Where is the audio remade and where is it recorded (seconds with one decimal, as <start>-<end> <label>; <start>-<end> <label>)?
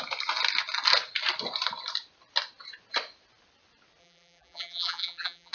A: 0.0-4.0 recorded; 4.0-5.5 remade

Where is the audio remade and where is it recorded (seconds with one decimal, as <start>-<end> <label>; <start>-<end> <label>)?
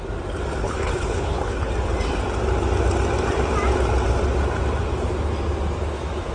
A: 0.0-0.6 recorded; 0.6-1.7 remade; 1.7-6.3 recorded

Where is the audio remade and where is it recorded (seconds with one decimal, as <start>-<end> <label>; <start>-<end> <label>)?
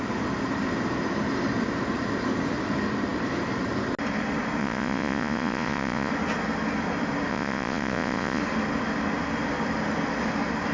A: 0.0-4.6 recorded; 4.6-6.1 remade; 6.1-7.3 recorded; 7.3-8.4 remade; 8.4-10.7 recorded